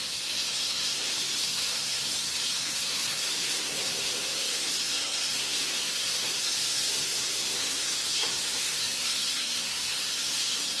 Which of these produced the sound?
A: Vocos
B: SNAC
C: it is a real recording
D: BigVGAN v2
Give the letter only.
B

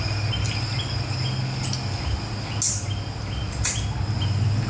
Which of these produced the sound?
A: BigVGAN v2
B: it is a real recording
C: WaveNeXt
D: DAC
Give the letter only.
B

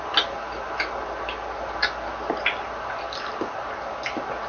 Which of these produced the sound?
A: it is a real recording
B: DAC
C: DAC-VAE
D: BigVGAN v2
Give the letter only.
A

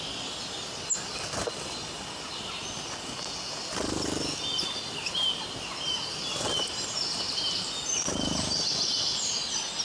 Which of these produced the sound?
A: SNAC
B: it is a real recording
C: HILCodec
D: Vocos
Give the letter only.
B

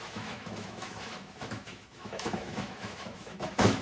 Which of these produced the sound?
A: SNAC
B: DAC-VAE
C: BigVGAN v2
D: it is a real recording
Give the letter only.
B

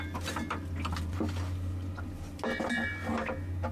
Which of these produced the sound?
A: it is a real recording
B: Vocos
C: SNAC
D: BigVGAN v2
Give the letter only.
A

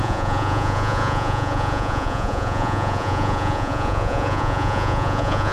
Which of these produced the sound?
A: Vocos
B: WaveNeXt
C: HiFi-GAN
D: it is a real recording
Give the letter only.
A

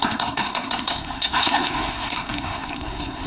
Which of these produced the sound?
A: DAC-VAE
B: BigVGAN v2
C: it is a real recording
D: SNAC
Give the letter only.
D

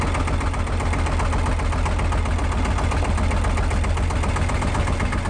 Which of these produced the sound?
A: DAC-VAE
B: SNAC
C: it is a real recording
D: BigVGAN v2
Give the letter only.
C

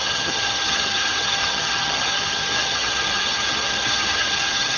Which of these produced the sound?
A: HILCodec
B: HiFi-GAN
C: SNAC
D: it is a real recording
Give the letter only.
B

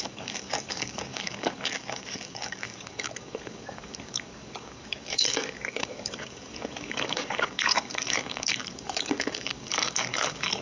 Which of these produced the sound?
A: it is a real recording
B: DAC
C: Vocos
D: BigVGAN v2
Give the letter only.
B